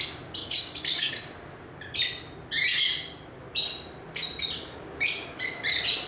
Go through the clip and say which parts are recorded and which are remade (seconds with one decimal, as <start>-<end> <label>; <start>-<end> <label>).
0.0-0.4 recorded; 0.4-1.1 remade; 1.1-6.1 recorded